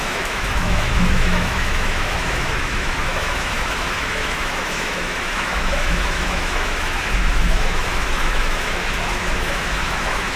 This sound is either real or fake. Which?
fake